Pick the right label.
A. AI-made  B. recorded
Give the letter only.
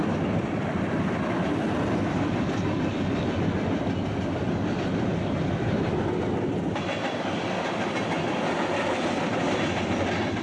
B